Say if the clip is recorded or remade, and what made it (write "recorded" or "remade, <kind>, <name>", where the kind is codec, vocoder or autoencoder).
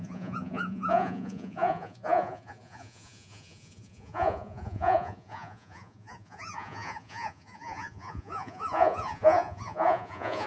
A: remade, vocoder, Vocos